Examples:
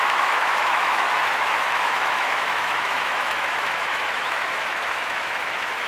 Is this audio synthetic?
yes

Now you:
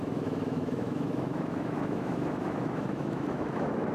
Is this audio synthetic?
yes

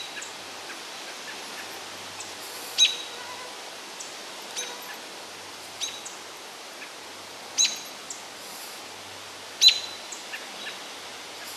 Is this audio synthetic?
no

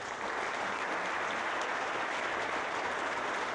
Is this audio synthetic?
no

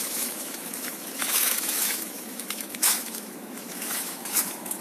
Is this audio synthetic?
yes